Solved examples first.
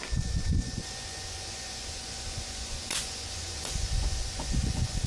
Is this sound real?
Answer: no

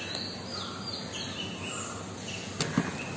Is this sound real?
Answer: yes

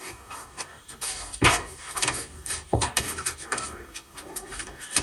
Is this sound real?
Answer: no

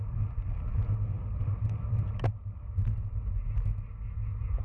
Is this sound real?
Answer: yes